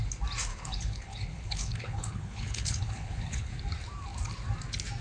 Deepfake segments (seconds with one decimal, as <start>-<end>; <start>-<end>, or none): 0.5-3.5